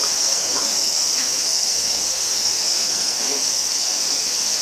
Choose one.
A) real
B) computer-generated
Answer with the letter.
B